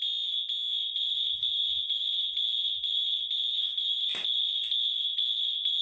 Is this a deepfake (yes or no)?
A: no